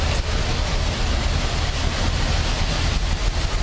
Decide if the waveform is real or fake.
real